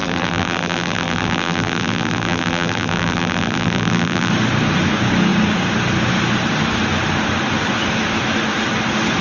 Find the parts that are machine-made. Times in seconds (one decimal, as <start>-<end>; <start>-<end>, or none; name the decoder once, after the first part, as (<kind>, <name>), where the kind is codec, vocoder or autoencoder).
0.0-4.3 (vocoder, BigVGAN v2)